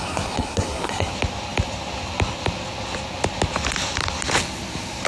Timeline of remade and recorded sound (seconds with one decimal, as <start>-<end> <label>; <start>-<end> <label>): 0.0-1.1 remade; 1.1-5.1 recorded